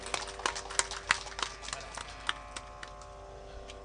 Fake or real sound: real